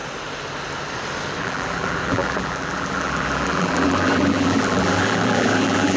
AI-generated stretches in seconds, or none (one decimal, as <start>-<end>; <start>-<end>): 1.4-6.0